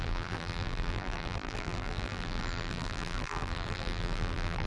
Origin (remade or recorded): remade